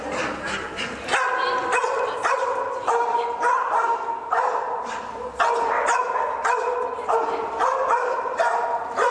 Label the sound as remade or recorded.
recorded